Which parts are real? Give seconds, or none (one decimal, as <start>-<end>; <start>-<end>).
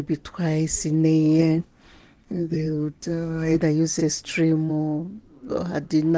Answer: 0.0-1.4; 3.6-6.2